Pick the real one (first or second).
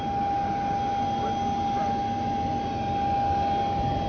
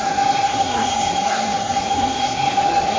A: first